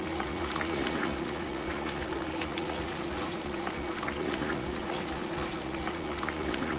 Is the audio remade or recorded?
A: remade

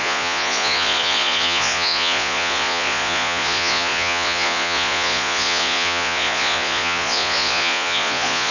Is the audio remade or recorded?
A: remade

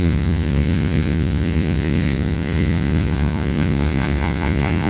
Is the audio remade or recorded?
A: remade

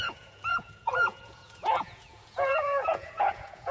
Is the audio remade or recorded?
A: remade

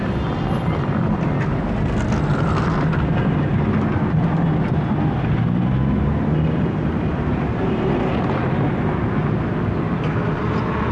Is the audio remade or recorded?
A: recorded